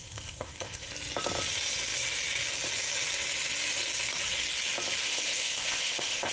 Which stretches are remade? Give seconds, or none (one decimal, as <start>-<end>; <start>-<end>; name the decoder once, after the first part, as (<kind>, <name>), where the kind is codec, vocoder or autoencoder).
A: 0.0-0.9 (codec, ZipCodec); 5.0-6.3